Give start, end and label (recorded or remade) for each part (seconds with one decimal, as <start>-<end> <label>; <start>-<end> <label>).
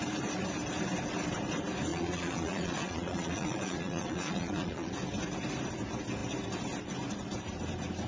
0.0-1.9 recorded; 1.9-4.9 remade; 4.9-8.1 recorded